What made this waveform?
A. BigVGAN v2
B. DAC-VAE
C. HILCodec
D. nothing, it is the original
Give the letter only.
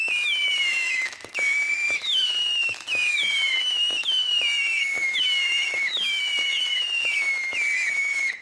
B